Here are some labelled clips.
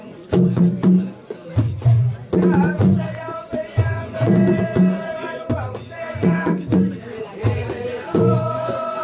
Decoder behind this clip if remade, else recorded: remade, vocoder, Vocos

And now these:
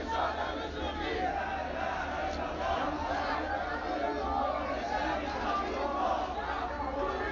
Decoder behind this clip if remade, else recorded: recorded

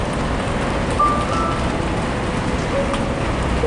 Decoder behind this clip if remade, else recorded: recorded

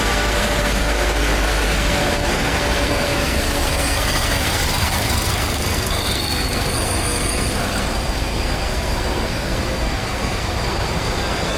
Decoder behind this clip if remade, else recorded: remade, codec, SNAC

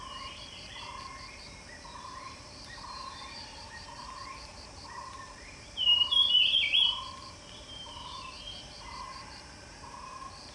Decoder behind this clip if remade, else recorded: remade, vocoder, BigVGAN v2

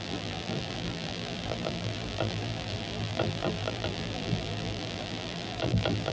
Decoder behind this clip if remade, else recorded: remade, vocoder, BigVGAN v2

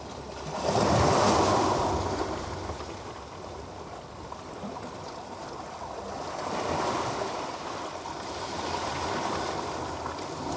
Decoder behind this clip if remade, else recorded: recorded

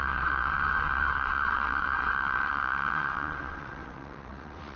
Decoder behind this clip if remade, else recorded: remade, vocoder, WaveNeXt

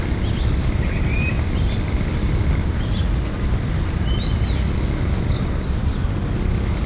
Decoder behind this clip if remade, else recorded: recorded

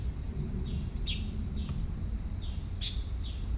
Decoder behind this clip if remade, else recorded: recorded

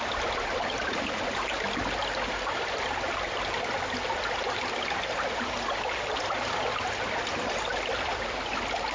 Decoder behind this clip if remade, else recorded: recorded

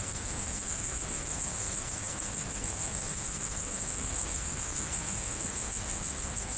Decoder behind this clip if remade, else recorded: remade, codec, SNAC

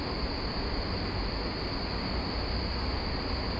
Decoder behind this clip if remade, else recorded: recorded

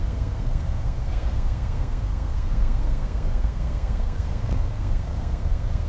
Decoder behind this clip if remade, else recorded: remade, codec, SNAC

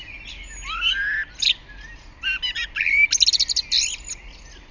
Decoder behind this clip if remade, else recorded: recorded